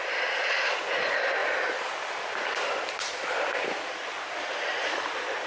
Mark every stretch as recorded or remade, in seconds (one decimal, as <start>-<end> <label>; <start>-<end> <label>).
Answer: 0.0-5.5 recorded